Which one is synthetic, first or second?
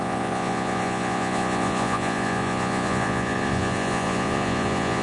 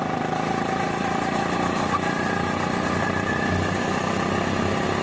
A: first